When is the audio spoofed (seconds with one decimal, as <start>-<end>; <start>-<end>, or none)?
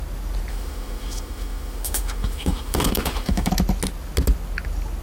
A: 0.5-3.5